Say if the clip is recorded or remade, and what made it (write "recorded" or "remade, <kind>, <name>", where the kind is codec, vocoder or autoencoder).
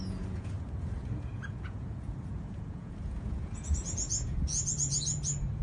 remade, vocoder, Vocos